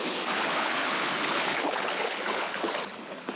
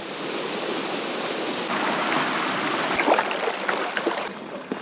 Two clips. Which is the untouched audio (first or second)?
second